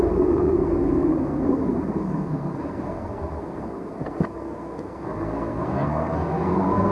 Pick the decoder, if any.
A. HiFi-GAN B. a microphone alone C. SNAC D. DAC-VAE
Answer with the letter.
C